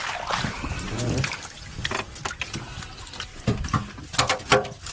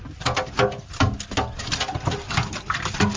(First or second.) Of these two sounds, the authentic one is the second